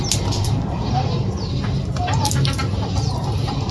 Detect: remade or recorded recorded